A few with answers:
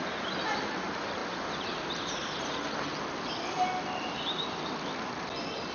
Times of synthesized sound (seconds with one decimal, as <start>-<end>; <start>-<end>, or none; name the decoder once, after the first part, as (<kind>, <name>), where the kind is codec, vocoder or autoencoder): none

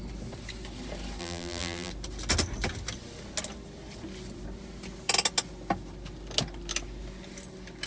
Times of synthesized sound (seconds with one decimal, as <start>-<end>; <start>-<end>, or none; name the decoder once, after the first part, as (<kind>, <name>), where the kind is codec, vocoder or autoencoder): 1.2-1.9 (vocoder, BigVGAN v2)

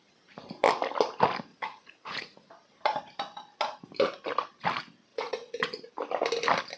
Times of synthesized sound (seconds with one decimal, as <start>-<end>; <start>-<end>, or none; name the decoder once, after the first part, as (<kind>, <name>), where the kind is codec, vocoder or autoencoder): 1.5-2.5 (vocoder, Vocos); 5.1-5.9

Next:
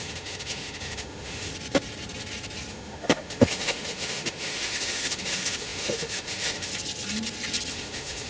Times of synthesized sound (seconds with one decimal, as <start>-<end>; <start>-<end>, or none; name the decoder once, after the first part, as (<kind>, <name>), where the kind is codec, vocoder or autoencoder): 0.0-1.5 (autoencoder, DAC-VAE); 2.7-6.7; 7.7-8.3

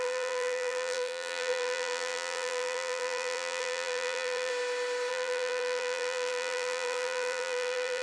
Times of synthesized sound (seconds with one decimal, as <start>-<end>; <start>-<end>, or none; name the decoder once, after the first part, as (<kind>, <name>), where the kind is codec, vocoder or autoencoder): 0.0-4.5 (vocoder, BigVGAN v2); 5.1-8.0

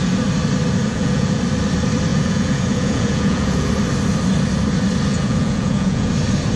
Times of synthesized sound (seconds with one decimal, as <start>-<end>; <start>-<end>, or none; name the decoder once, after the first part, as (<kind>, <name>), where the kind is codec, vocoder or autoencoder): 0.8-1.4 (vocoder, Vocos); 2.1-3.7; 5.1-6.1

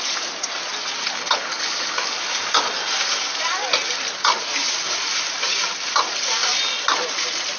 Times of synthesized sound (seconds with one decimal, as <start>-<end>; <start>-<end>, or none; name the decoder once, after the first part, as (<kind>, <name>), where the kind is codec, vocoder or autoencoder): 1.0-2.2 (codec, HILCodec)